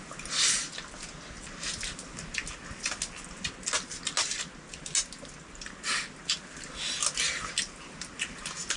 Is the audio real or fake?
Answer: real